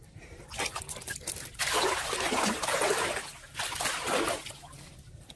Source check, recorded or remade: recorded